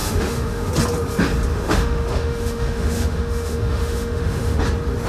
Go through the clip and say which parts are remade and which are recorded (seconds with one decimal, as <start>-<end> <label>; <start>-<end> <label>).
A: 0.0-0.7 remade; 0.7-1.5 recorded; 1.5-4.6 remade; 4.6-5.1 recorded